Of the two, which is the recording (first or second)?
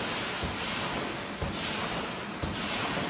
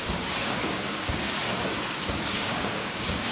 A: first